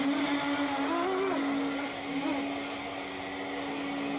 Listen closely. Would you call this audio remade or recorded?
recorded